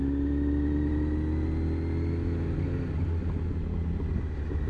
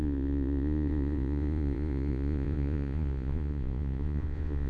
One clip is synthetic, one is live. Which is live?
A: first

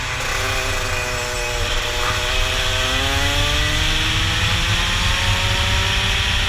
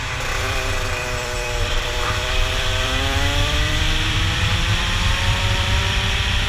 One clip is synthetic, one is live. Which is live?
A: first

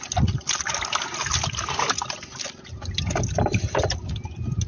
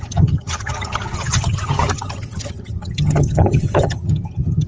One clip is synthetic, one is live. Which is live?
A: first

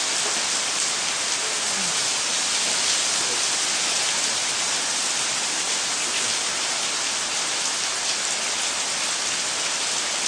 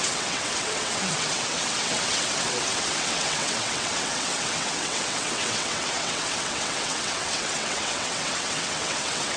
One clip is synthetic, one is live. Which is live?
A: first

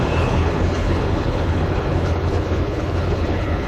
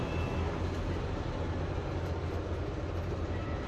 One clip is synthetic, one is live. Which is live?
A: second